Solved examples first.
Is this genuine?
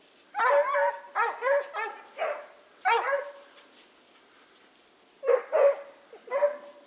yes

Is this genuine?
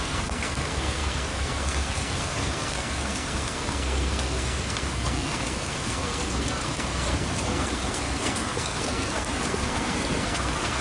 no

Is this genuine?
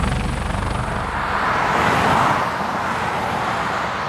yes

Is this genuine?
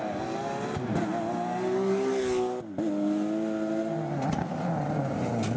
yes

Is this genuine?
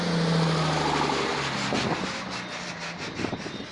yes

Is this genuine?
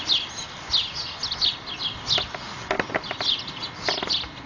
yes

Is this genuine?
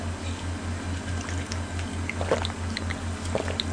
yes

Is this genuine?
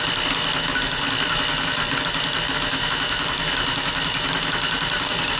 yes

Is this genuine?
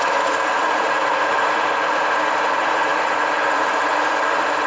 no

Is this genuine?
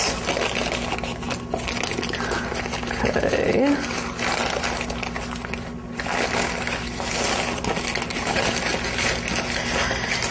yes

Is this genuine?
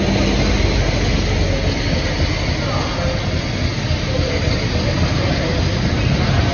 yes